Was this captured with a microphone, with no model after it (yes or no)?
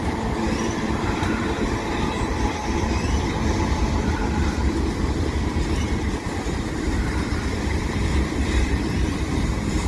no